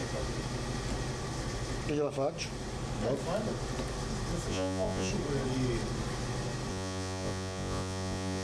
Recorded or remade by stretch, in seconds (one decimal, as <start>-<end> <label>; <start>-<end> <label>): 0.0-4.5 recorded; 4.5-5.1 remade; 5.1-6.7 recorded; 6.7-8.4 remade